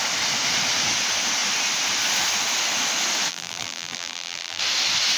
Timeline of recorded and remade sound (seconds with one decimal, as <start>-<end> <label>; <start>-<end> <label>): 0.0-3.3 recorded; 3.3-4.6 remade; 4.6-5.2 recorded